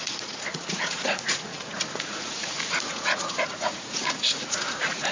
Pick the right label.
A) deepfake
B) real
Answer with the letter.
A